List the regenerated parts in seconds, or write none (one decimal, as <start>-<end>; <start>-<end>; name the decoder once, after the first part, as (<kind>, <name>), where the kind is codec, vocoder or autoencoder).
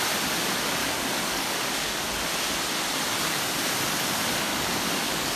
0.8-2.0 (codec, DAC); 4.5-5.4